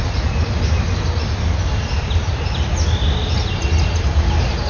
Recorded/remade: recorded